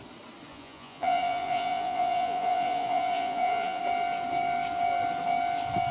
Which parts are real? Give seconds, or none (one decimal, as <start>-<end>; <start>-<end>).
0.0-0.5; 3.8-5.9

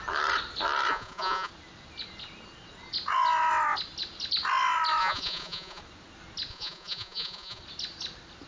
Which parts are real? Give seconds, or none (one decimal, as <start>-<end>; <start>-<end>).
0.0-0.9; 1.5-5.0; 5.8-6.5; 7.6-8.5

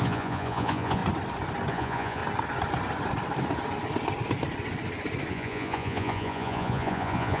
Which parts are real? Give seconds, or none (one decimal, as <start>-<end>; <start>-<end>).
1.0-1.7; 2.2-5.3

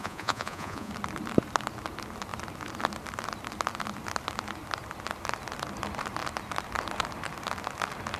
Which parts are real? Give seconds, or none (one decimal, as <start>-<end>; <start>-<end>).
0.9-8.2